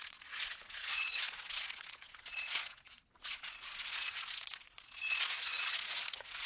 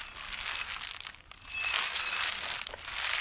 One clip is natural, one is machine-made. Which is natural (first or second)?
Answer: second